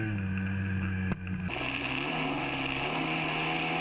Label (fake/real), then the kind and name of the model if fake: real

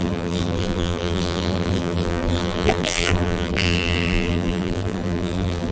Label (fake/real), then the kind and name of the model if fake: fake, vocoder, BigVGAN v2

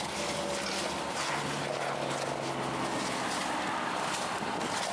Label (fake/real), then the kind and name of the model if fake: real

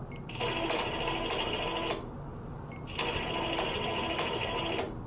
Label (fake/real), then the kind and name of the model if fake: real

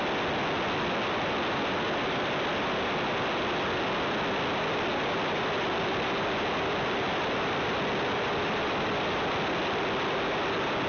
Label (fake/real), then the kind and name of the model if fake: real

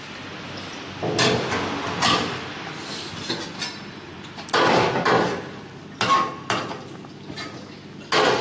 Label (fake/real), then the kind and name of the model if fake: real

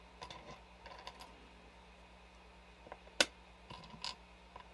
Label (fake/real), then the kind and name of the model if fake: real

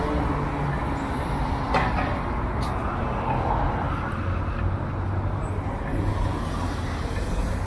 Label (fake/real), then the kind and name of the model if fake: real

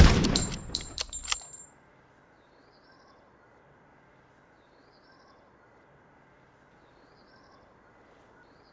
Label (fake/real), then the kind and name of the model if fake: fake, vocoder, BigVGAN v2